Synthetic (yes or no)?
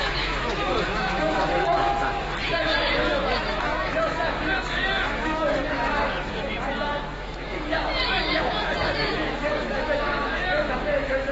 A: yes